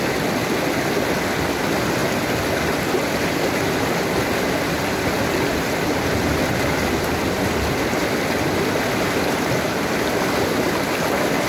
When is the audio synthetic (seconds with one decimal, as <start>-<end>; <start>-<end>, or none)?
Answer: none